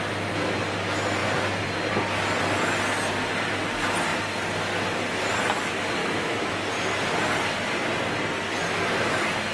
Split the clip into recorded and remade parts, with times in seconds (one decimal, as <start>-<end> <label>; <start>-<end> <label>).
0.0-6.0 recorded; 6.0-6.6 remade; 6.6-9.5 recorded